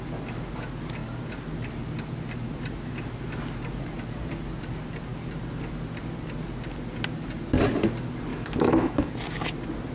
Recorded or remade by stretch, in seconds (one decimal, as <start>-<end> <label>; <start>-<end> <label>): 0.0-8.3 recorded; 8.3-9.1 remade; 9.1-9.9 recorded